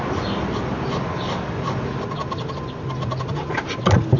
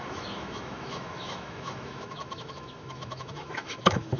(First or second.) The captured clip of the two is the first